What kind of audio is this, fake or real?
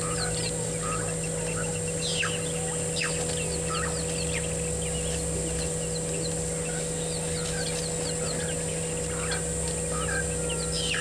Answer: real